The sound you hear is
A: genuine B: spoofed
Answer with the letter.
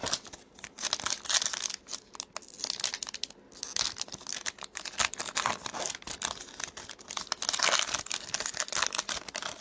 A